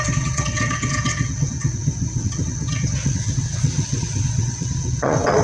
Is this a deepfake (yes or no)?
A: yes